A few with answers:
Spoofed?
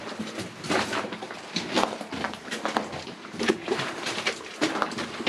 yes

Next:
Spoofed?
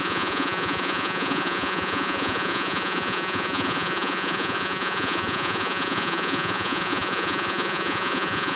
yes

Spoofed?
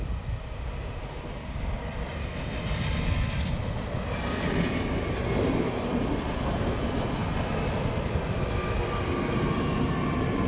no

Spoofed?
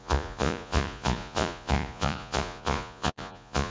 yes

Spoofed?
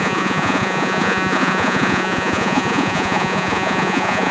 yes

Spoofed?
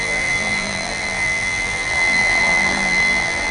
yes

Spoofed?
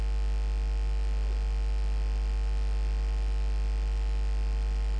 no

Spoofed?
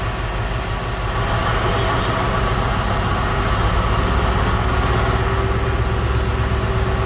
no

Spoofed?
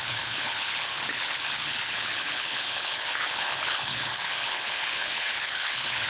yes